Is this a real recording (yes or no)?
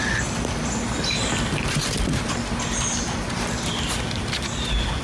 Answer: yes